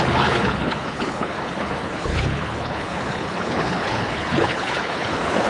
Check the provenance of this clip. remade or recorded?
remade